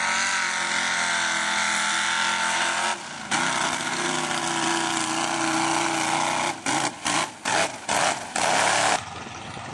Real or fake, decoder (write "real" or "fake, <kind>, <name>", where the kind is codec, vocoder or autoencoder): real